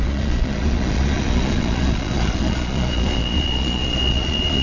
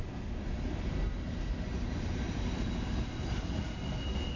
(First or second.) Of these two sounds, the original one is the second